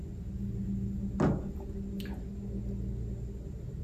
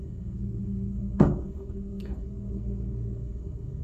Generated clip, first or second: second